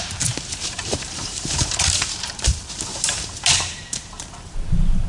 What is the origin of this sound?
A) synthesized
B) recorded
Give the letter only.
A